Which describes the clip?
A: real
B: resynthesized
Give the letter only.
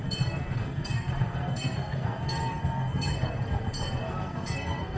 B